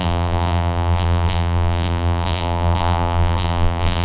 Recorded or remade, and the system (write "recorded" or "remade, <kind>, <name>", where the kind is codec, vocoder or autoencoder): remade, vocoder, BigVGAN v2